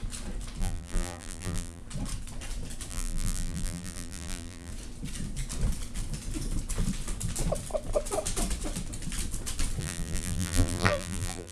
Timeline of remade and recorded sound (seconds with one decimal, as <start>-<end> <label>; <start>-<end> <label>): 0.0-0.6 recorded; 0.6-1.8 remade; 1.8-2.9 recorded; 2.9-4.7 remade; 4.7-9.8 recorded; 9.8-11.5 remade